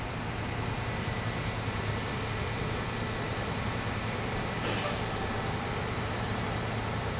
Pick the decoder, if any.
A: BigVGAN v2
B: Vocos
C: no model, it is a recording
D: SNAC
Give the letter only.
A